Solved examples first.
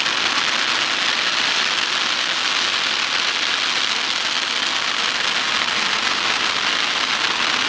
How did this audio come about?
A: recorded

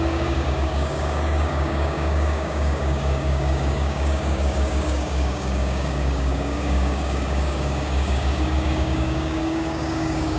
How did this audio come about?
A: remade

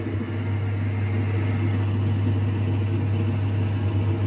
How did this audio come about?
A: recorded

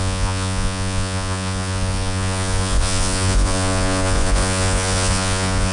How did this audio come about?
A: remade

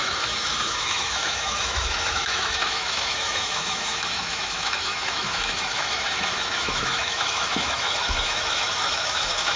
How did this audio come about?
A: remade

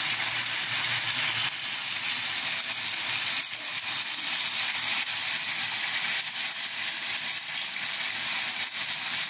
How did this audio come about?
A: recorded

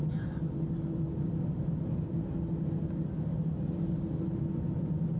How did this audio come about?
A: recorded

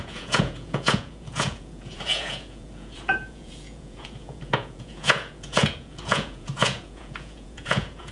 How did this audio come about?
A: remade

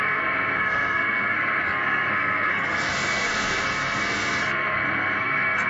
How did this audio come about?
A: remade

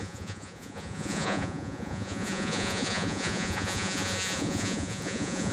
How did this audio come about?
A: remade